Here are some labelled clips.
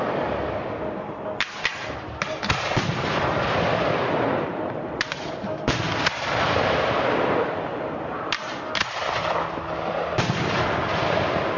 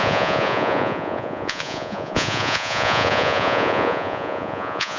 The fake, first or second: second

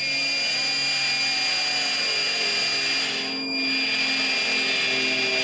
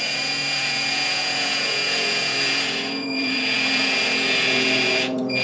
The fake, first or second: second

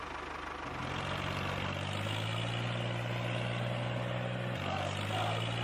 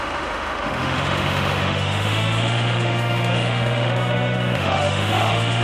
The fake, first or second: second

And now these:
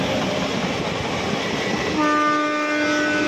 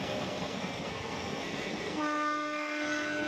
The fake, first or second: second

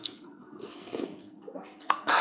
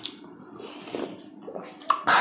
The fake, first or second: first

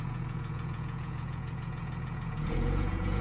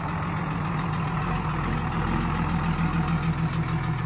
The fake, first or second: first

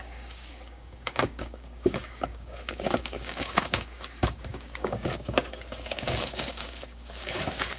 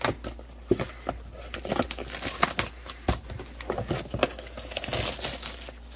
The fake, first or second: first